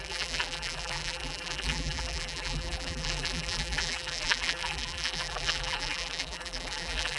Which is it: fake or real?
fake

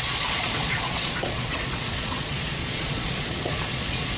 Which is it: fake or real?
fake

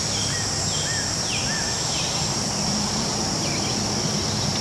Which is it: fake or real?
real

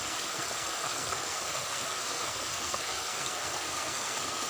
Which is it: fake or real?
fake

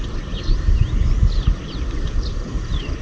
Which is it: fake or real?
fake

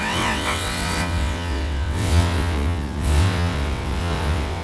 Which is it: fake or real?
fake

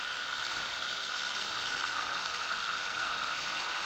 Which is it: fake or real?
fake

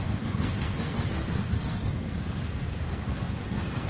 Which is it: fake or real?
fake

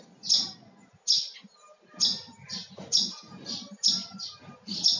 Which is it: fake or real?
real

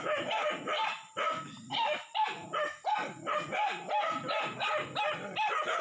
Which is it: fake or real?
real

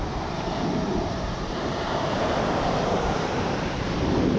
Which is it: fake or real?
fake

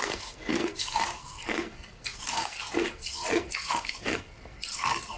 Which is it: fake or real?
fake